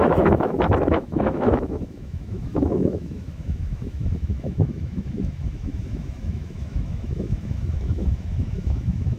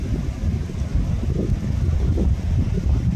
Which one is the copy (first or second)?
first